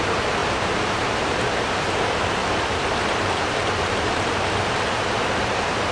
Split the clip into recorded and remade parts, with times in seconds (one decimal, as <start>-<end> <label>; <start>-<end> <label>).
0.0-2.4 remade; 2.4-3.1 recorded; 3.1-5.9 remade